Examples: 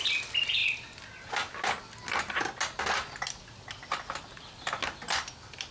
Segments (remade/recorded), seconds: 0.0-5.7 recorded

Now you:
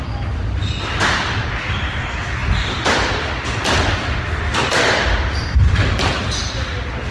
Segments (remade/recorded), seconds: 0.0-2.4 recorded; 2.4-5.0 remade; 5.0-7.1 recorded